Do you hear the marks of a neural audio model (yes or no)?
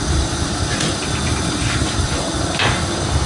no